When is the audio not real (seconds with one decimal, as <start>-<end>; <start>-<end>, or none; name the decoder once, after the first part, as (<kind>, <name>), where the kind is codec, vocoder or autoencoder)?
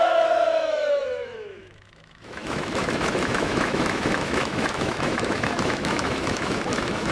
0.0-7.1 (autoencoder, DAC-VAE)